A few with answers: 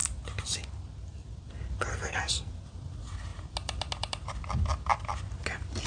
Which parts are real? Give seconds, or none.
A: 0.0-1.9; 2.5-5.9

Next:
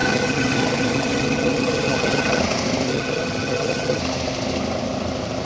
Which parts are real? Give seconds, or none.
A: 2.4-2.9; 4.0-5.4